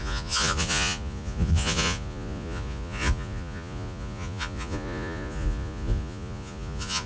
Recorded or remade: remade